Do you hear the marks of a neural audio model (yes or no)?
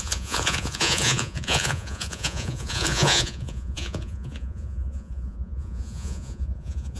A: yes